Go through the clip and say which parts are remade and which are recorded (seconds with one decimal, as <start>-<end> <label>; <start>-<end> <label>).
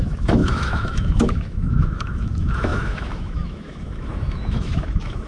0.0-5.3 remade